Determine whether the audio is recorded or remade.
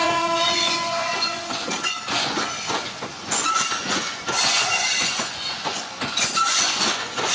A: remade